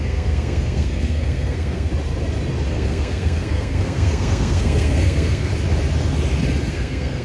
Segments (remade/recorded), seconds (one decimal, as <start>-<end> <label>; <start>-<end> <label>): 0.0-1.9 remade; 1.9-2.7 recorded; 2.7-5.5 remade; 5.5-6.7 recorded; 6.7-7.2 remade